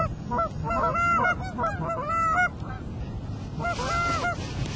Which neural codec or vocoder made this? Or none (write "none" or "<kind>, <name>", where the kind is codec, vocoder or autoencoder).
none